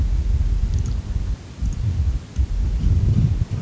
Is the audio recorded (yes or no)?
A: yes